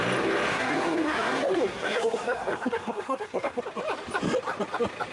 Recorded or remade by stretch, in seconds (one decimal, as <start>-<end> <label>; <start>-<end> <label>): 0.0-0.5 recorded; 0.5-3.6 remade; 3.6-5.1 recorded